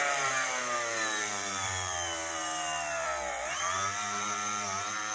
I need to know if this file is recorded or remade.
remade